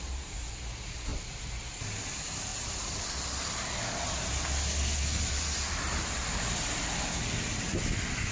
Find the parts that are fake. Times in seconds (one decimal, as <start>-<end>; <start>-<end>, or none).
1.1-1.6